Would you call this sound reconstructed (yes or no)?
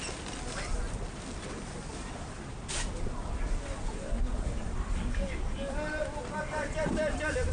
no